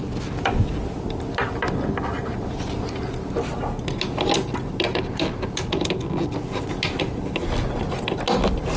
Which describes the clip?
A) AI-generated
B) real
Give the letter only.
B